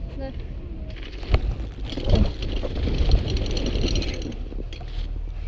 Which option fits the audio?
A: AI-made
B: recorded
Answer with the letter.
B